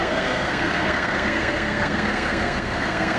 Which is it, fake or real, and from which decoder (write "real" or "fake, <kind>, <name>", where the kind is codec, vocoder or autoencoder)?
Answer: fake, codec, SNAC